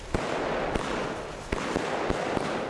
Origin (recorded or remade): recorded